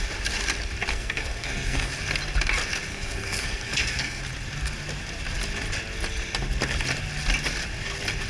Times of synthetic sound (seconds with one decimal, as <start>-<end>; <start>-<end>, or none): 0.9-1.9; 2.9-4.2